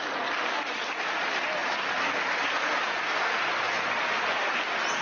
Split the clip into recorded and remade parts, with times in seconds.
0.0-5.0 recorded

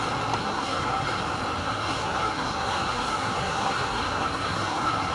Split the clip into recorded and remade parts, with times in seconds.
0.0-0.4 recorded; 0.4-1.2 remade; 1.2-1.6 recorded; 1.6-5.1 remade

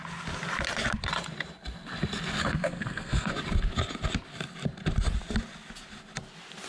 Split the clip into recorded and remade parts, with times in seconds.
0.0-2.4 recorded; 2.4-3.3 remade; 3.3-6.7 recorded

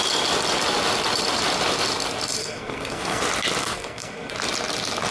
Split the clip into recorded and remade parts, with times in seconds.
0.0-2.4 recorded; 2.4-3.2 remade; 3.2-3.6 recorded; 3.6-4.3 remade; 4.3-5.1 recorded

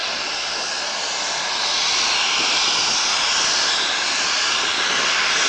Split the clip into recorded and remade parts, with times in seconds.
0.0-5.5 recorded

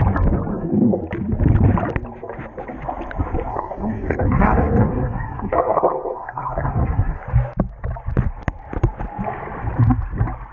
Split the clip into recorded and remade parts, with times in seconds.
0.0-0.5 recorded; 0.5-1.0 remade; 1.0-3.5 recorded; 3.5-7.2 remade; 7.2-10.5 recorded

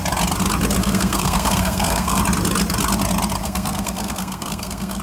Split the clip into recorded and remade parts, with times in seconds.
0.0-0.8 recorded; 0.8-2.2 remade; 2.2-3.4 recorded; 3.4-5.0 remade